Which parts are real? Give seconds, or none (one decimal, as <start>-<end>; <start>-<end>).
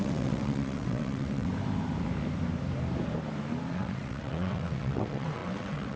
1.5-3.7